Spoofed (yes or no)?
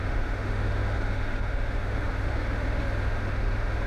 yes